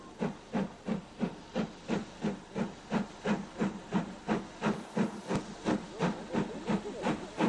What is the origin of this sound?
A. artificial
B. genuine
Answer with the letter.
B